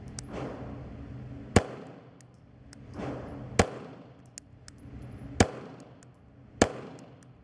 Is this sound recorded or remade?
recorded